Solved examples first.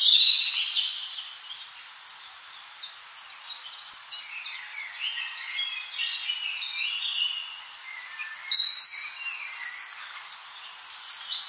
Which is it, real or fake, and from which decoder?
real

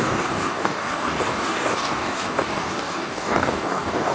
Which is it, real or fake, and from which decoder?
fake, codec, DAC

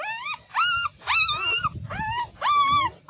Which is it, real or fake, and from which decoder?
real